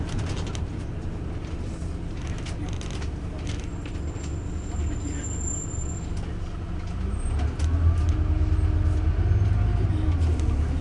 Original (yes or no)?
yes